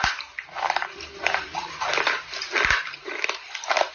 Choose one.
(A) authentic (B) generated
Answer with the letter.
B